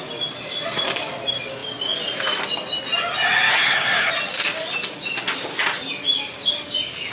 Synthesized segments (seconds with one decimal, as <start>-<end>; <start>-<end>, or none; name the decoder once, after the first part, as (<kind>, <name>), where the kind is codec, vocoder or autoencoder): 3.5-4.1 (codec, SNAC)